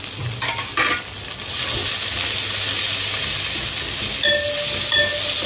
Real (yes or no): yes